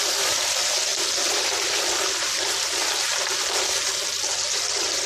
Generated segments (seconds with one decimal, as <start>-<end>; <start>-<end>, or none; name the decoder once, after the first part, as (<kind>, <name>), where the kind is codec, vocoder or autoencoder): none